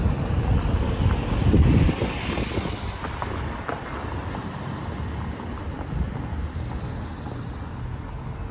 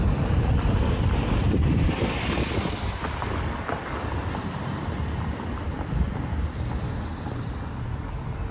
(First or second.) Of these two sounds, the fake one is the second